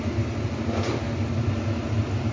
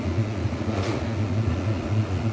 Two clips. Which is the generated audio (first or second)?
second